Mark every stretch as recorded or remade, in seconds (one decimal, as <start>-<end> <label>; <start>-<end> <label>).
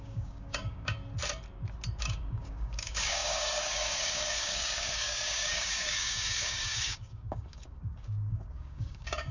0.0-1.0 remade; 1.0-2.0 recorded; 2.0-9.3 remade